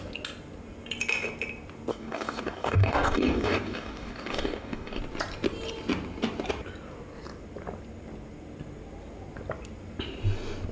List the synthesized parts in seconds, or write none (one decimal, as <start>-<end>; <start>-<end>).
1.9-5.0